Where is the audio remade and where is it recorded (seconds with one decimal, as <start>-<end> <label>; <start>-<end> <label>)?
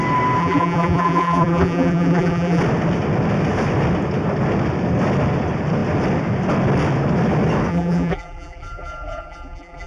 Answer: 0.0-0.4 recorded; 0.4-2.6 remade; 2.6-7.7 recorded; 7.7-9.9 remade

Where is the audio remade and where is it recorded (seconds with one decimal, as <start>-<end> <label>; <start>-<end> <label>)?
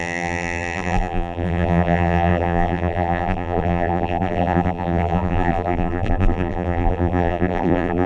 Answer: 0.0-8.1 remade